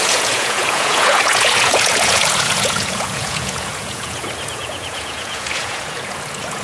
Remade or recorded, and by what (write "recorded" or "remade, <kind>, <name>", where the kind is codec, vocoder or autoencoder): remade, vocoder, Vocos